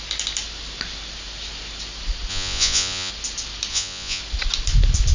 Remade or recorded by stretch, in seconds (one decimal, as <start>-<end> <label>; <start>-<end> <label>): 0.0-2.3 recorded; 2.3-3.1 remade; 3.1-3.7 recorded; 3.7-4.2 remade; 4.2-5.1 recorded